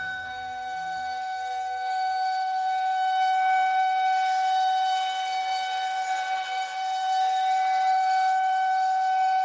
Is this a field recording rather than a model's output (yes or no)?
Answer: no